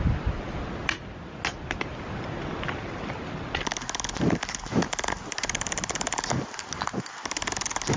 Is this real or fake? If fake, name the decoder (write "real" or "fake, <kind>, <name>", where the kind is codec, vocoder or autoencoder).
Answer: real